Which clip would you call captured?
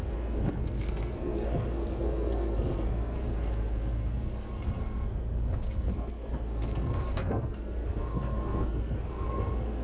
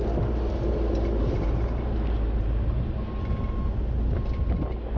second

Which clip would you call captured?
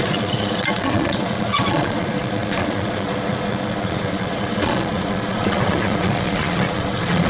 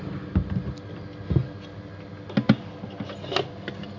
second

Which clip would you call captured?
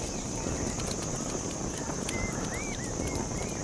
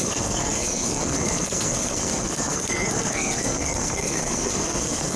first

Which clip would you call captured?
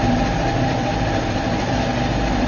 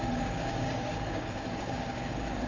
first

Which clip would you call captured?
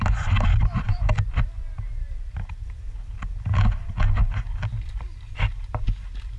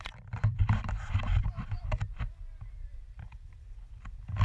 first